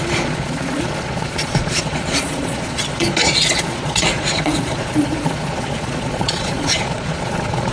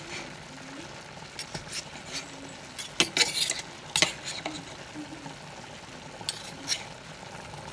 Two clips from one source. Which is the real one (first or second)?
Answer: second